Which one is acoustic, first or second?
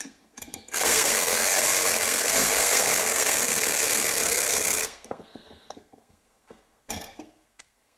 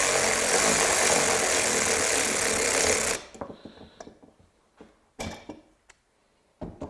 second